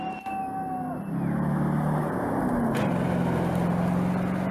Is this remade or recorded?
recorded